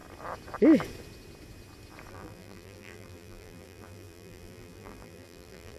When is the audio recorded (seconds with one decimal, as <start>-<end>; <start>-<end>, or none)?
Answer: 0.0-2.1